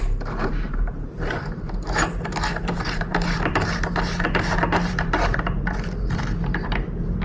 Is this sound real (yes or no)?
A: no